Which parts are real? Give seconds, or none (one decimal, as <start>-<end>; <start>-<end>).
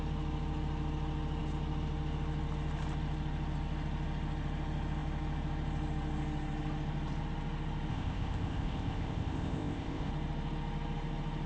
0.0-7.9; 10.1-11.5